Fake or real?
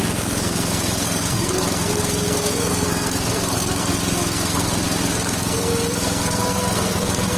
fake